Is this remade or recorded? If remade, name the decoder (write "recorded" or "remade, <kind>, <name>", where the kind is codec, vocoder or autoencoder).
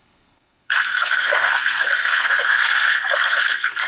remade, codec, SNAC